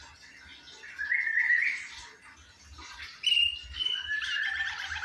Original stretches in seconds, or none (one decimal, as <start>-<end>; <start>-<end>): 0.0-5.0